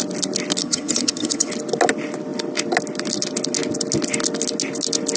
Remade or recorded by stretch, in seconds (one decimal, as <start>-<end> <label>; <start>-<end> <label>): 0.0-0.6 recorded; 0.6-1.5 remade; 1.5-5.2 recorded